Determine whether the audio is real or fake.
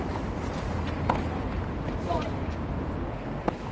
real